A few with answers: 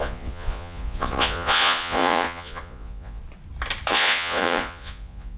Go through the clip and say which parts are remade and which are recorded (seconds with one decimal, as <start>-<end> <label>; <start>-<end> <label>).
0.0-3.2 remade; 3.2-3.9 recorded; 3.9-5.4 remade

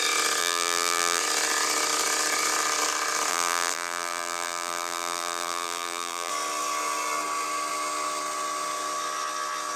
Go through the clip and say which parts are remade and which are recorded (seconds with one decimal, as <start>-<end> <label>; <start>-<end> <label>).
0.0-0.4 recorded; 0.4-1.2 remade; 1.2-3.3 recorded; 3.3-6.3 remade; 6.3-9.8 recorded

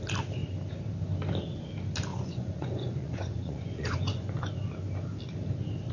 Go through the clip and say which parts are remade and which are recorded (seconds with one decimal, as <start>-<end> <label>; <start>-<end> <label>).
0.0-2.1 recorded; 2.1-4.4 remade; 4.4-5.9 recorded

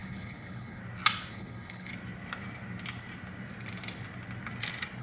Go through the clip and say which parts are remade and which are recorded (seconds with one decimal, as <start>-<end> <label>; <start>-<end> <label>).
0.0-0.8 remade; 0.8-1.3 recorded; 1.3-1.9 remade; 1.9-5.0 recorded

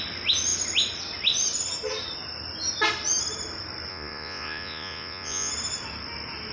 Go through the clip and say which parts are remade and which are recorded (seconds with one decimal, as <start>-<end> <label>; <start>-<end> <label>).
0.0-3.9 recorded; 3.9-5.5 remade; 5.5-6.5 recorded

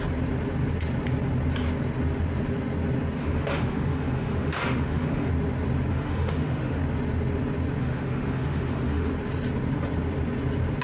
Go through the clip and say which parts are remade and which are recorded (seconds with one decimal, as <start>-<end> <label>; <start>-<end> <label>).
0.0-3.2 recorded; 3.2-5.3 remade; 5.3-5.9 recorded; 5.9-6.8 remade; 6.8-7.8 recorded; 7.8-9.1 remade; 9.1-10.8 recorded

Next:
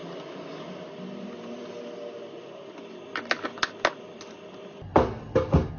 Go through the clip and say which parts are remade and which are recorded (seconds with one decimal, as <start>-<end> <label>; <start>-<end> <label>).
0.0-5.8 recorded